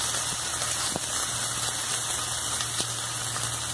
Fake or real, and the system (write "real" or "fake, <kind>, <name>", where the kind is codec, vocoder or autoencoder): real